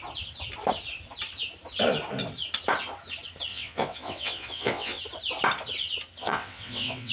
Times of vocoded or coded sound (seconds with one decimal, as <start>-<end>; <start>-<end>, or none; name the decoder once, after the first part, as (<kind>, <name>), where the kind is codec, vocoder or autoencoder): 3.5-5.0 (vocoder, WaveNeXt); 6.2-7.1